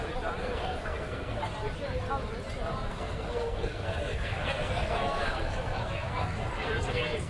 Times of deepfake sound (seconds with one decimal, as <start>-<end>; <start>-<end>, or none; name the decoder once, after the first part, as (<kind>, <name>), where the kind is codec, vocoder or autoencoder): 0.4-1.4 (codec, SNAC); 2.9-7.3